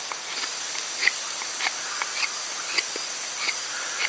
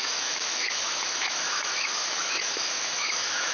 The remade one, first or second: second